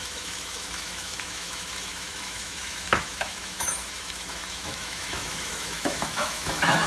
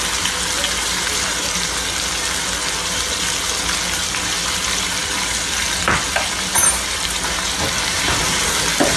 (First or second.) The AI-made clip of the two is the first